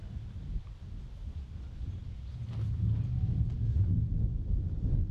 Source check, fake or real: real